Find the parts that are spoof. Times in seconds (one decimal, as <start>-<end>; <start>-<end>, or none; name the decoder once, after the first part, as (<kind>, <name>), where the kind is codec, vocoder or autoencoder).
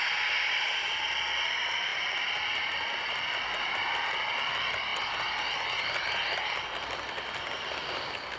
none